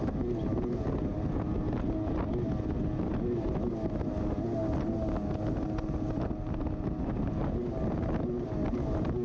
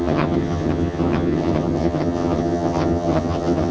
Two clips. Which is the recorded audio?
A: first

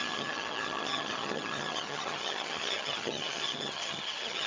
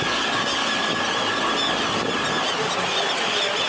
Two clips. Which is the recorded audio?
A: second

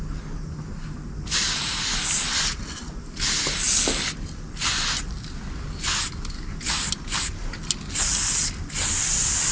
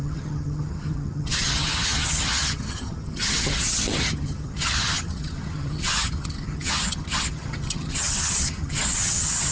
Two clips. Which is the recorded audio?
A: first